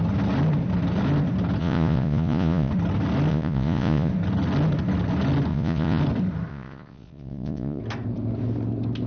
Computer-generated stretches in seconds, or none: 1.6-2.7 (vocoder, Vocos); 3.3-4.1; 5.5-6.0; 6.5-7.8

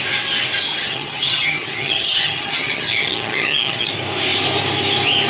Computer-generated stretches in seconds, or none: 0.7-3.9 (vocoder, HiFi-GAN)

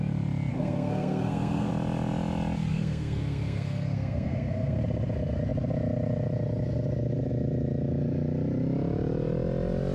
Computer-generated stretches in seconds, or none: 0.5-1.7 (codec, SNAC); 2.7-4.8

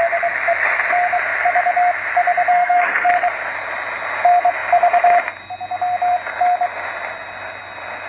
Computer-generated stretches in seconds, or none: 2.5-3.1 (codec, SNAC)

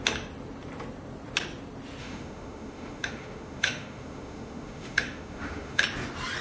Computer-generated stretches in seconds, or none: 2.0-5.8 (autoencoder, DAC-VAE)

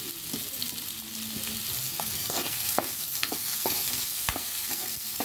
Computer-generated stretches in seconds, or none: 1.8-5.2 (codec, SNAC)

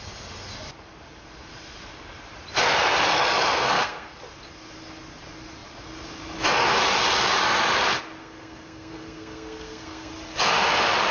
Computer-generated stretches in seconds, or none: 3.5-4.2 (codec, SNAC); 8.2-10.1